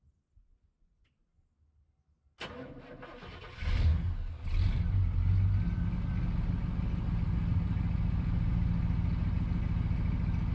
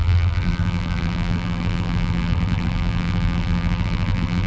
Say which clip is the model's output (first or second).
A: second